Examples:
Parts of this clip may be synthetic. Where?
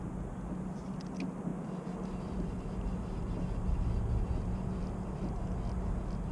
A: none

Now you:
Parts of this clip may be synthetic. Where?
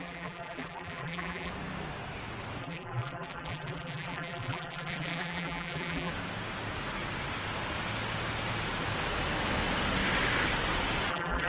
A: 0.0-1.5 (vocoder, BigVGAN v2); 2.6-6.1; 11.1-11.5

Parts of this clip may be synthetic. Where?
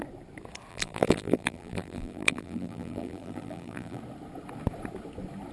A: 0.7-4.0 (vocoder, BigVGAN v2)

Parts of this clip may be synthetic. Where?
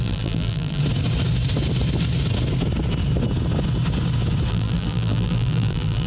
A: 0.0-0.8 (vocoder, BigVGAN v2); 4.5-6.1